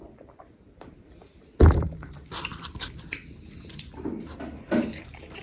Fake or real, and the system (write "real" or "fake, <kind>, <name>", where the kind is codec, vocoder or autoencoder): real